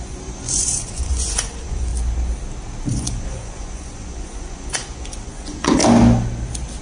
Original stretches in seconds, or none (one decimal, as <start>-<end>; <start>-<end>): 1.9-2.9; 5.8-6.8